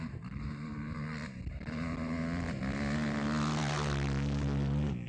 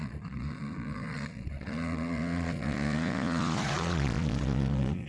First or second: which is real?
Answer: first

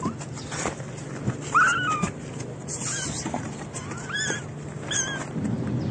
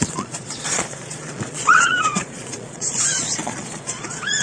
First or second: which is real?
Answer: first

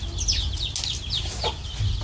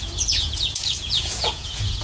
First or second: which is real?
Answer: first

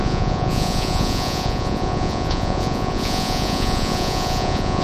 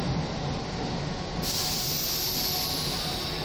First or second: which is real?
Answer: second